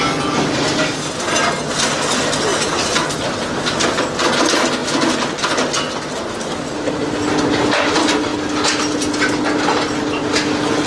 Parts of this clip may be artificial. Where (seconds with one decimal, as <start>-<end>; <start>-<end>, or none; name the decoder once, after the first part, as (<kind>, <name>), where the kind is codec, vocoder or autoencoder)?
none